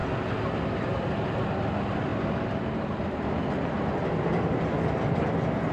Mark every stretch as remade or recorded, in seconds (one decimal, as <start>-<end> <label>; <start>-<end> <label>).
0.0-5.7 recorded